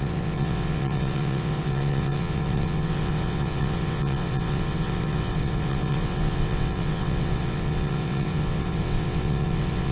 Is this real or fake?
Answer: fake